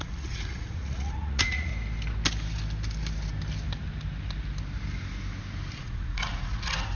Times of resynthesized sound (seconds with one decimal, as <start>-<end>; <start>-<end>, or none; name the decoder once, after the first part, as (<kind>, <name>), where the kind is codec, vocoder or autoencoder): 0.0-1.7 (vocoder, Vocos); 5.8-6.9